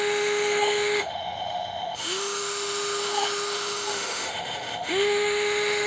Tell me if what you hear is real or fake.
fake